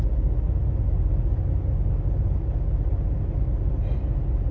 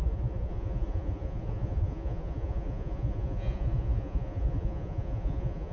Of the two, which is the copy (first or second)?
second